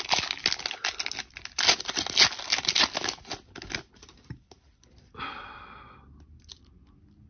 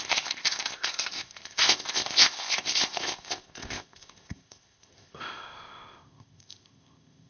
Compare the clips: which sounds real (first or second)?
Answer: first